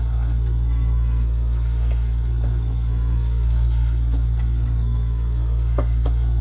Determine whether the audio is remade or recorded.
remade